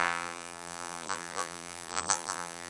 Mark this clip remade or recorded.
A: remade